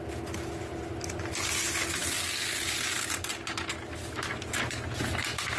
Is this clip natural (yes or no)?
yes